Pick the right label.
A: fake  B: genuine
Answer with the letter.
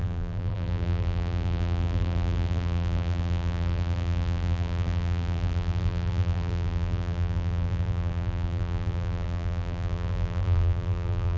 A